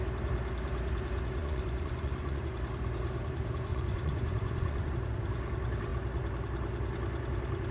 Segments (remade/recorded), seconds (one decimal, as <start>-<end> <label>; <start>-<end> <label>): 0.0-1.4 recorded; 1.4-2.4 remade; 2.4-3.7 recorded; 3.7-4.9 remade; 4.9-7.7 recorded